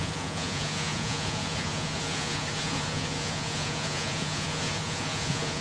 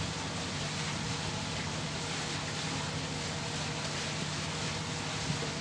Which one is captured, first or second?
second